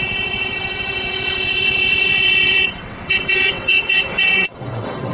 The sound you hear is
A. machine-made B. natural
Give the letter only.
A